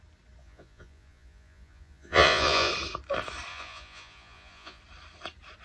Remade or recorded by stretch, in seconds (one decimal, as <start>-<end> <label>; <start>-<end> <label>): 0.0-0.4 recorded; 0.4-2.7 remade; 2.7-3.5 recorded; 3.5-4.8 remade; 4.8-5.6 recorded